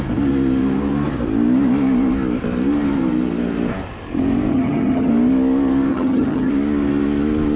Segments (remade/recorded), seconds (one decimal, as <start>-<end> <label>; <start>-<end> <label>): 0.0-4.5 recorded; 4.5-5.1 remade; 5.1-5.9 recorded; 5.9-6.5 remade; 6.5-7.6 recorded

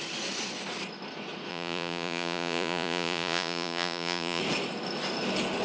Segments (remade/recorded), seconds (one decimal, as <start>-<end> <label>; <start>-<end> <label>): 0.0-1.5 recorded; 1.5-4.4 remade; 4.4-5.6 recorded